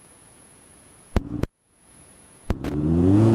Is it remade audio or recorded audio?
remade